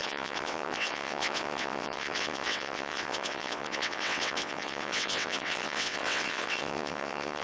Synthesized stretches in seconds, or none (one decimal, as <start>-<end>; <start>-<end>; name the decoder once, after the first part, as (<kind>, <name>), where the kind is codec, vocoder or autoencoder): 0.0-7.4 (vocoder, WaveNeXt)